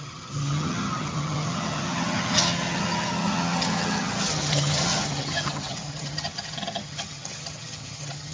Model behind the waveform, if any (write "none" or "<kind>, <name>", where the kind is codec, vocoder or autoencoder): vocoder, HiFi-GAN